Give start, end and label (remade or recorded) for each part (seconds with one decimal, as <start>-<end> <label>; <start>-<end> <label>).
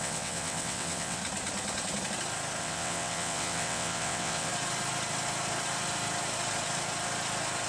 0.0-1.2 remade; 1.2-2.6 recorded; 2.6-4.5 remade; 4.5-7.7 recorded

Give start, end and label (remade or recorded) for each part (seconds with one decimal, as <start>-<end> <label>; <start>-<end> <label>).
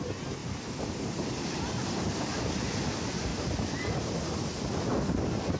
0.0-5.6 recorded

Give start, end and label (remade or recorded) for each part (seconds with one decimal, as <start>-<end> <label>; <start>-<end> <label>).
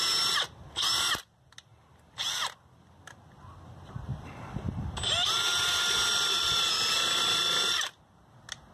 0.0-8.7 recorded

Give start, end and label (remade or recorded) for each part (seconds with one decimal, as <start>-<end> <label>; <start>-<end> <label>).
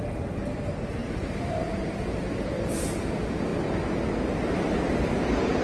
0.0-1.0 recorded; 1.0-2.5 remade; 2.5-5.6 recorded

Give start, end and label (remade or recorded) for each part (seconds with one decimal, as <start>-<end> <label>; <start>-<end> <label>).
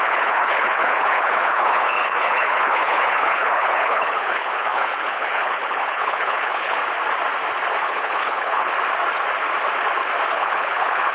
0.0-6.8 remade; 6.8-7.8 recorded; 7.8-8.7 remade; 8.7-10.3 recorded; 10.3-11.1 remade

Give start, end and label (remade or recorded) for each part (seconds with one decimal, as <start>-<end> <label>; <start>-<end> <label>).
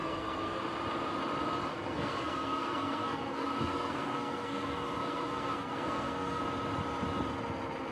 0.0-0.6 remade; 0.6-1.7 recorded; 1.7-6.4 remade; 6.4-7.9 recorded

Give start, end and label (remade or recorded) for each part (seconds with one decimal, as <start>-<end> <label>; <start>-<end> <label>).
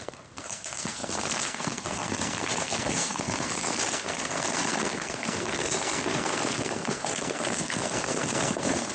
0.0-8.9 remade